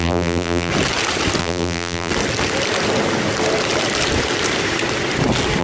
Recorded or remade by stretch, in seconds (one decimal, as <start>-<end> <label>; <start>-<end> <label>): 0.0-0.7 remade; 0.7-1.4 recorded; 1.4-2.1 remade; 2.1-5.6 recorded